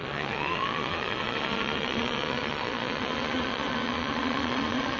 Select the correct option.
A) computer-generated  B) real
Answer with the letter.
A